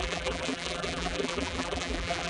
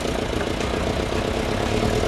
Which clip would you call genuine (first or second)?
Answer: second